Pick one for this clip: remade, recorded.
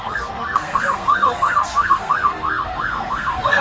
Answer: remade